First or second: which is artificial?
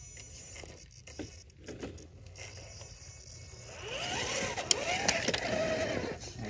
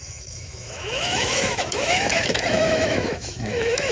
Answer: second